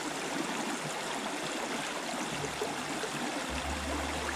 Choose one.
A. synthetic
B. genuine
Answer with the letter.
B